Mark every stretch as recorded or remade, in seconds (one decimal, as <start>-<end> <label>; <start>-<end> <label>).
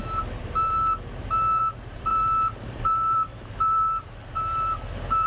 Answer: 0.0-5.3 remade